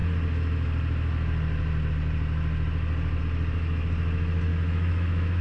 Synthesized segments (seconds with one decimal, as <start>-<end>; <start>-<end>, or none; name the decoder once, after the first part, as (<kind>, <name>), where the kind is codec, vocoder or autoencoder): 4.5-5.4 (autoencoder, DAC-VAE)